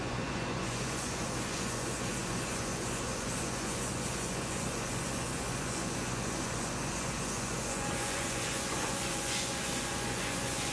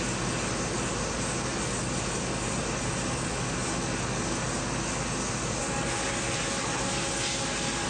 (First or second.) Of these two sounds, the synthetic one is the first